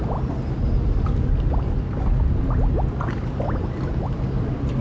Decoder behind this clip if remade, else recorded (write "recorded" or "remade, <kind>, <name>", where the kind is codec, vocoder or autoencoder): recorded